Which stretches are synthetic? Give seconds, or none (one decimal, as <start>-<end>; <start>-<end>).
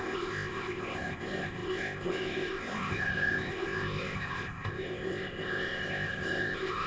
0.0-6.9